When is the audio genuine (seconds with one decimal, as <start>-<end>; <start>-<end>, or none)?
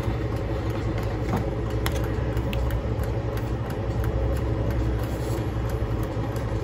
none